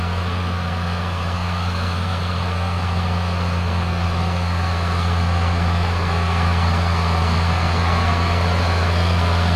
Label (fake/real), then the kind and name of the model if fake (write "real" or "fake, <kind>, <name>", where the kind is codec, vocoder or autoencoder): fake, codec, SNAC